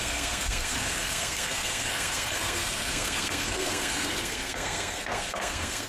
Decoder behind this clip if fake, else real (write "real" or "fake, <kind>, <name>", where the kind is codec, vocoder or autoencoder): fake, codec, SNAC